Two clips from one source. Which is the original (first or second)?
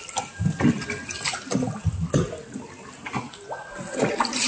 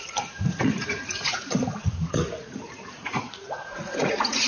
first